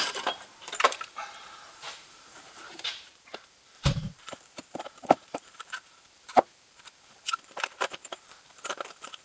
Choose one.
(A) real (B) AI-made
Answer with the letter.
B